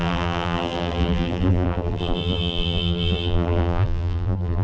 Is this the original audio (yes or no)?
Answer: no